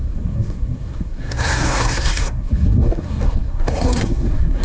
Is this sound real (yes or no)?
no